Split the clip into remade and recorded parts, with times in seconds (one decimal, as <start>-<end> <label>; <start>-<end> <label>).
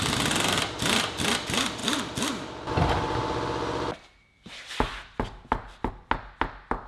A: 0.0-6.9 recorded